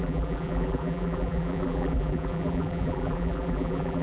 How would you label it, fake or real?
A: fake